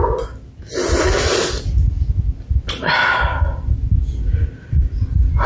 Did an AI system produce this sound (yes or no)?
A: no